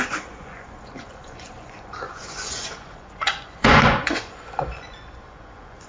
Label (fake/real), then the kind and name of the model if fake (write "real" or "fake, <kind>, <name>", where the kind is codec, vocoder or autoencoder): fake, vocoder, Vocos